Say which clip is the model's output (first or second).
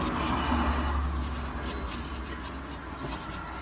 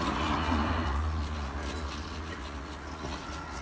second